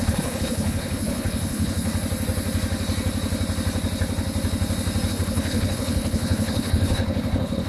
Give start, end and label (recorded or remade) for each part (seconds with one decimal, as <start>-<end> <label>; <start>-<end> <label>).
0.0-1.9 remade; 1.9-5.1 recorded; 5.1-7.7 remade